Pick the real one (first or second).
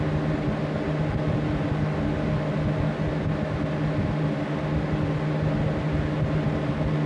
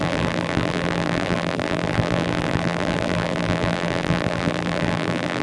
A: first